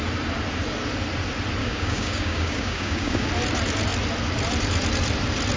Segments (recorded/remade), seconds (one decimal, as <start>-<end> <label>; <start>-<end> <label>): 0.0-1.6 recorded; 1.6-3.3 remade; 3.3-5.6 recorded